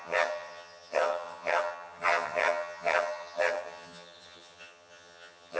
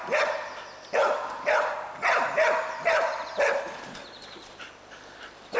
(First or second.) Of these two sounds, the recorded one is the second